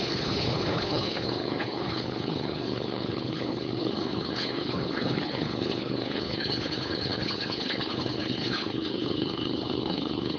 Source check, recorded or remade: remade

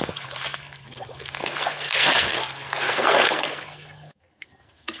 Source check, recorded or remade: remade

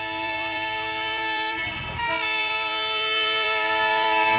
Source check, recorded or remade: remade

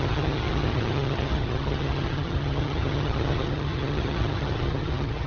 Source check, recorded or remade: remade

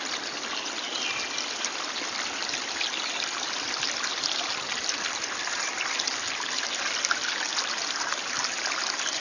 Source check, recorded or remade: recorded